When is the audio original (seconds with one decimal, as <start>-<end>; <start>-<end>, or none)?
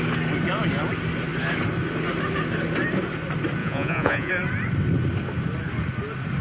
0.0-3.6; 4.3-6.4